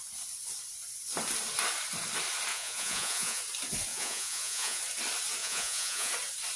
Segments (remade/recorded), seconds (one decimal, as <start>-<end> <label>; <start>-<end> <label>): 0.0-2.5 recorded; 2.5-3.4 remade; 3.4-3.9 recorded; 3.9-4.8 remade; 4.8-5.4 recorded; 5.4-6.1 remade; 6.1-6.6 recorded